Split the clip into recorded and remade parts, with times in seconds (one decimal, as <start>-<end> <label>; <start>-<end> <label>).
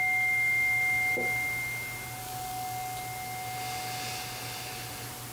0.0-2.2 recorded; 2.2-3.0 remade; 3.0-5.3 recorded